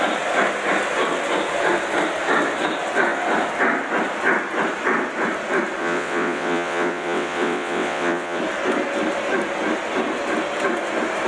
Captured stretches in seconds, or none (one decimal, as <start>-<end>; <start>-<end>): 0.0-5.8; 8.4-11.3